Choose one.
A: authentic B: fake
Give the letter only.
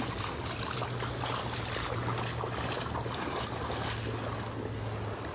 A